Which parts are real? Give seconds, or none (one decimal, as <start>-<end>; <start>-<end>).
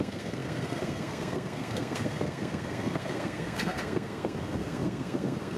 none